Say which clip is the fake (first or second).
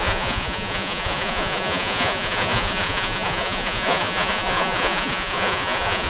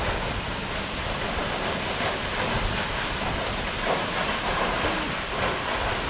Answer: first